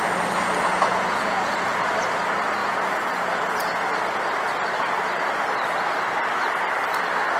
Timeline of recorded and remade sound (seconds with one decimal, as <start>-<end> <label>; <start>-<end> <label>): 0.0-0.7 recorded; 0.7-1.9 remade; 1.9-2.6 recorded; 2.6-3.8 remade; 3.8-7.4 recorded